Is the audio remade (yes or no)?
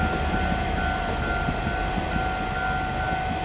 no